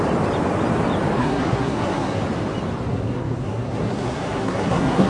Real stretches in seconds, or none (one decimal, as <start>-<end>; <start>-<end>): 0.0-1.2; 2.2-2.9

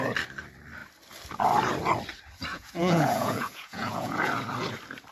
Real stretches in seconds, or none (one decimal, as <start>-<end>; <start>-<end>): 0.0-2.5; 4.3-5.1

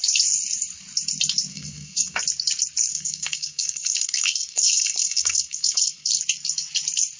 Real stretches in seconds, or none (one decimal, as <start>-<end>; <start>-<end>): 0.0-1.5; 2.2-2.9; 6.1-7.2

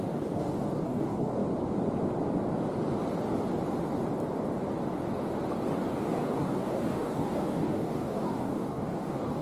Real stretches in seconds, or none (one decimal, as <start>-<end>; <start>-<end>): 1.4-6.0

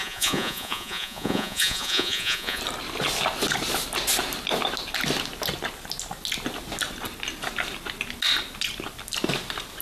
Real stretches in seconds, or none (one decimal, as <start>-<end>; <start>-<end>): 2.6-9.8

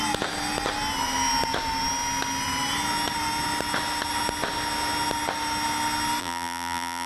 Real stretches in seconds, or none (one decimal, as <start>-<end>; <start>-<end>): 0.0-6.2

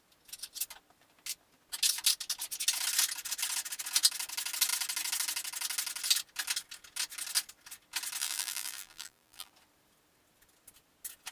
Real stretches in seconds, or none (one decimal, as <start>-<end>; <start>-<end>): 0.0-8.2; 9.5-11.3

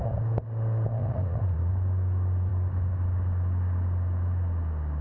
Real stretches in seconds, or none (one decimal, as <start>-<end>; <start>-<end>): 0.0-1.0; 1.7-5.0